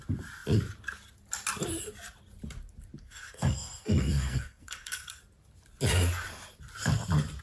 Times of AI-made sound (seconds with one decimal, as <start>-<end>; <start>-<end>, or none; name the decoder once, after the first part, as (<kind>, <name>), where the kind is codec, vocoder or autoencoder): 3.0-5.2 (codec, SNAC)